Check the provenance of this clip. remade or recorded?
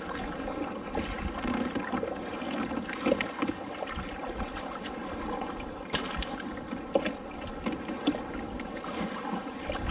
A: recorded